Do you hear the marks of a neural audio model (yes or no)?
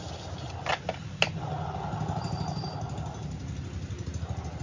no